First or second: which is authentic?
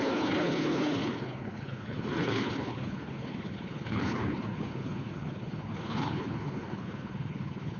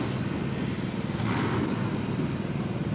second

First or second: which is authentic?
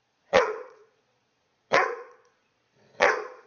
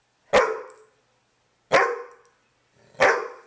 second